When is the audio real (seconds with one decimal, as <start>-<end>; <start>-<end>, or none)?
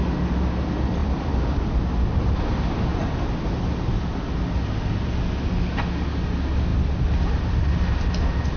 0.0-1.0; 1.6-8.6